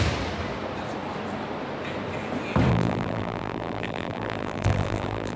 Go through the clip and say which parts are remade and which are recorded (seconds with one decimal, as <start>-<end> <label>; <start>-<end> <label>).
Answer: 0.0-2.7 recorded; 2.7-5.4 remade